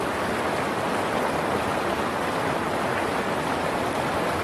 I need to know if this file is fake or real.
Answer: real